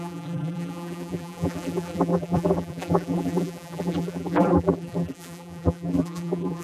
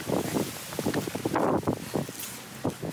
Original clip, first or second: second